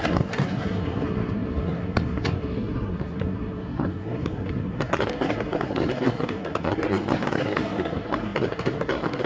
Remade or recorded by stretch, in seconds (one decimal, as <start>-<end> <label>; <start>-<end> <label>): 0.0-9.3 remade